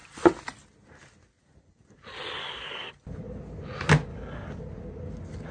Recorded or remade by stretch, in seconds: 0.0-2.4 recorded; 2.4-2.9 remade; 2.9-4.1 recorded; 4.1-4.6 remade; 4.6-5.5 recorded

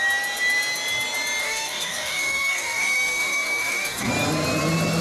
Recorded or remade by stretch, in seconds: 0.0-1.4 recorded; 1.4-4.1 remade; 4.1-5.0 recorded